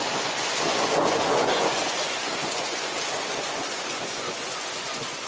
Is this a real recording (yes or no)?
no